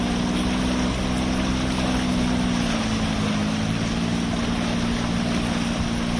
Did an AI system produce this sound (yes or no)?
no